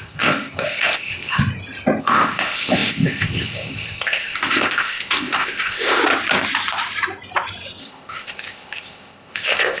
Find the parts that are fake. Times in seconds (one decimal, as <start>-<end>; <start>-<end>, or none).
0.0-1.4; 2.0-6.0; 7.8-9.8